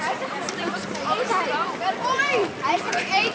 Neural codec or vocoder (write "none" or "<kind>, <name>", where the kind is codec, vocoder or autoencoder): none